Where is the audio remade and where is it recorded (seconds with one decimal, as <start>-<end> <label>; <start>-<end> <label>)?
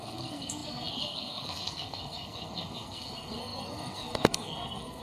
0.0-5.0 remade